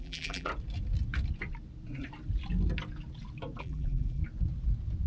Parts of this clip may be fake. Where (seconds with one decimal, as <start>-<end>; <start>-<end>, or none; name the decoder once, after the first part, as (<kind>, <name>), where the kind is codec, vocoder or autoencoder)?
0.0-0.5 (vocoder, BigVGAN v2); 3.6-4.2